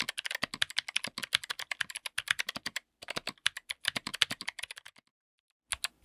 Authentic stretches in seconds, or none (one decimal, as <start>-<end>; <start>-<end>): 0.0-1.5; 4.4-6.0